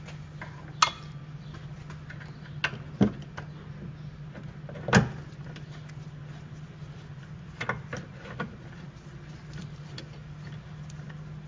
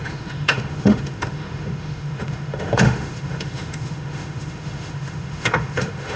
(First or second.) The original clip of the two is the first